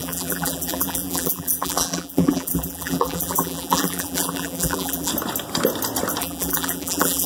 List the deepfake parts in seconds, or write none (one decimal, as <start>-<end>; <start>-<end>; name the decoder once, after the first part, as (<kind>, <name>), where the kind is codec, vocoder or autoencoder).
0.0-5.1 (vocoder, BigVGAN v2); 6.2-7.3